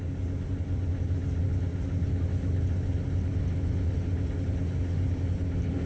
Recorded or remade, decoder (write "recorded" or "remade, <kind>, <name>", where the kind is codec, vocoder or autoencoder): recorded